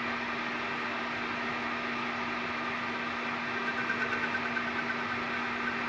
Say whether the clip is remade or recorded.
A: recorded